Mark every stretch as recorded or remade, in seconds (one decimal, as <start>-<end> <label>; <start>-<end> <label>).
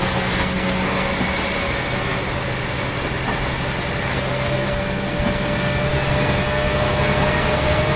0.0-1.1 remade; 1.1-1.6 recorded; 1.6-2.2 remade; 2.2-4.0 recorded; 4.0-8.0 remade